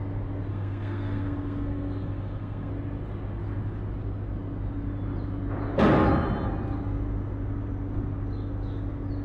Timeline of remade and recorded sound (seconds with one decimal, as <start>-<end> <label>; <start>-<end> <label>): 0.0-0.5 recorded; 0.5-2.7 remade; 2.7-9.2 recorded